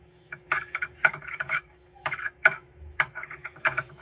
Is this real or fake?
fake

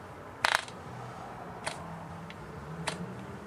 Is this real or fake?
real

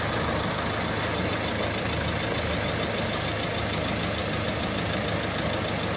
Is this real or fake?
real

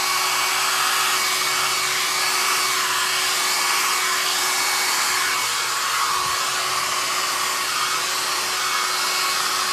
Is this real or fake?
real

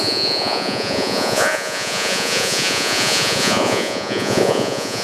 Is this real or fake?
fake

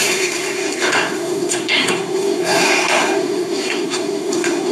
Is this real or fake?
fake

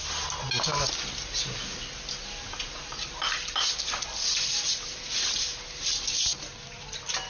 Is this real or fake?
real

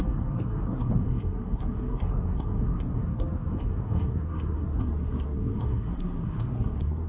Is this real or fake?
fake